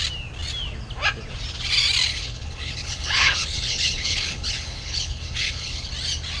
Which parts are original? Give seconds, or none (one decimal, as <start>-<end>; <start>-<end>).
0.0-2.1; 5.9-6.4